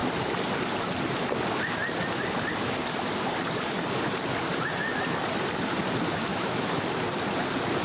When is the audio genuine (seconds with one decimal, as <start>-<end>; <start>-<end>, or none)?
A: 0.0-6.3; 6.8-7.8